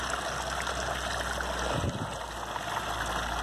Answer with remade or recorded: recorded